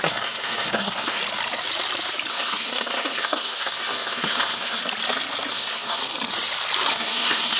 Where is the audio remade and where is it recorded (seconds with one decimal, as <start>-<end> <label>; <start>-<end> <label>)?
0.0-1.2 remade; 1.2-2.3 recorded; 2.3-4.8 remade; 4.8-5.5 recorded; 5.5-6.0 remade; 6.0-6.9 recorded; 6.9-7.6 remade